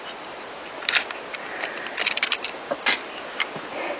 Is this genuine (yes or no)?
yes